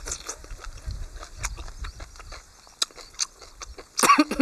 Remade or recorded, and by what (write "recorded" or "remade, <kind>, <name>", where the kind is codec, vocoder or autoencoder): recorded